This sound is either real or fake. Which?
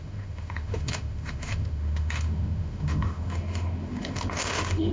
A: fake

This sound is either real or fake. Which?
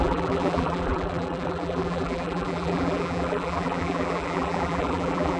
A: fake